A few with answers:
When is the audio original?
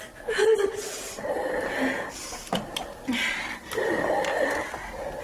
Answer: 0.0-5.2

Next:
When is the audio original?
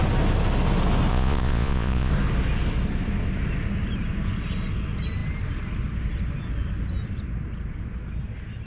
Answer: 0.0-1.1; 2.1-8.7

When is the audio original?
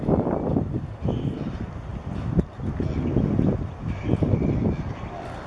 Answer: 0.0-5.5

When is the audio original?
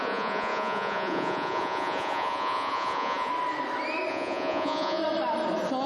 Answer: 3.3-4.1; 5.0-5.9